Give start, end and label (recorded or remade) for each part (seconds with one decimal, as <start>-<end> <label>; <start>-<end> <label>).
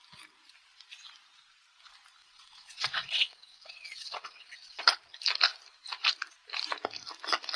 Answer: 0.0-2.2 recorded; 2.2-4.8 remade; 4.8-7.6 recorded